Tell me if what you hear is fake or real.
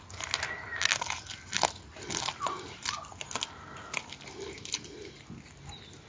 real